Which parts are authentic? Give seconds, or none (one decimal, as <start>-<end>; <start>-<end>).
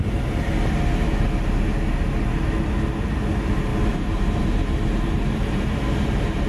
0.0-3.7; 5.8-6.5